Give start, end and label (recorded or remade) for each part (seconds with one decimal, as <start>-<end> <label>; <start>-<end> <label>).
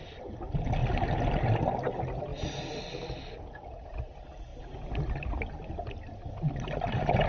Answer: 0.0-7.3 recorded